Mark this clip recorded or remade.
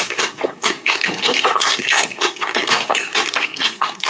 remade